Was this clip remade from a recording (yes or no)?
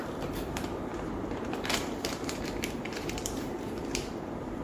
yes